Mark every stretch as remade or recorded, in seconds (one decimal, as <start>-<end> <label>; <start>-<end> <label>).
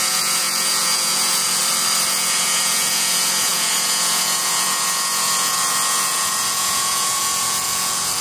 0.0-1.6 remade; 1.6-2.1 recorded; 2.1-8.2 remade